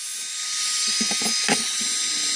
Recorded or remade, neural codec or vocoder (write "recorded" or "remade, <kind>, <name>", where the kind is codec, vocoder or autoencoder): recorded